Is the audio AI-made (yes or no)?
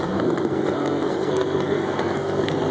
yes